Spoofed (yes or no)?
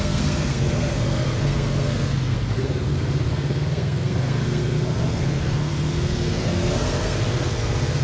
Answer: yes